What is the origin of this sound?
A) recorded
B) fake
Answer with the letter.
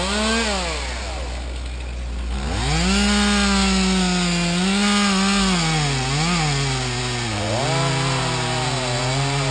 A